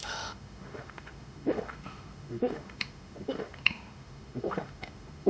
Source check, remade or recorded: remade